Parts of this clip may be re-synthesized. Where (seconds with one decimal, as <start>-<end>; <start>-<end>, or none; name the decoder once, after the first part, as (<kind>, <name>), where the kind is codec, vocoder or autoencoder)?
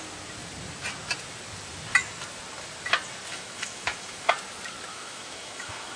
3.3-4.3 (autoencoder, DAC-VAE); 4.9-6.0